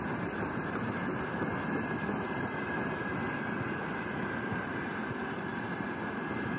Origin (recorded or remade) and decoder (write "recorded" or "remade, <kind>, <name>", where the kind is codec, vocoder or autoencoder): recorded